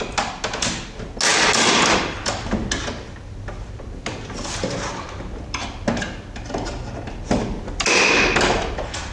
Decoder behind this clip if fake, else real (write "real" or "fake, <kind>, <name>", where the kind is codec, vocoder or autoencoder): real